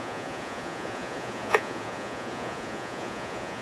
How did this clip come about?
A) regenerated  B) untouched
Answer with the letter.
A